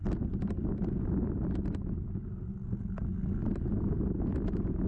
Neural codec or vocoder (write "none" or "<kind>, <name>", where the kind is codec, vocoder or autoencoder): none